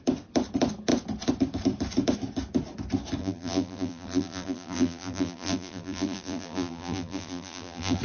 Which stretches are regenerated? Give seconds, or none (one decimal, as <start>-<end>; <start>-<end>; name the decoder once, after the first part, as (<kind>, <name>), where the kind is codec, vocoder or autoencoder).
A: 3.2-8.0 (vocoder, BigVGAN v2)